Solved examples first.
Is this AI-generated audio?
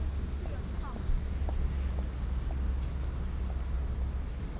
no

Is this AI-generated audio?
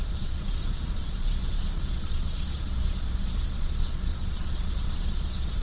yes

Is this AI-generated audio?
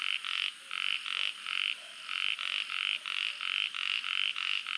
no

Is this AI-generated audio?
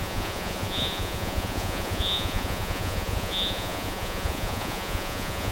yes